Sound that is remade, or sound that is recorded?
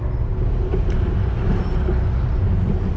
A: recorded